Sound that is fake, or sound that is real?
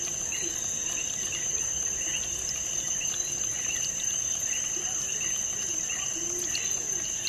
fake